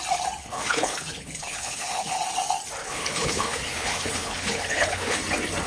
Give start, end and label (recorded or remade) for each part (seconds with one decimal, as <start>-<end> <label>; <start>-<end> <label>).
0.0-0.4 recorded; 0.4-2.2 remade; 2.2-2.8 recorded; 2.8-5.2 remade; 5.2-5.7 recorded